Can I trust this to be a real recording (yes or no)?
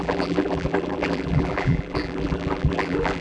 no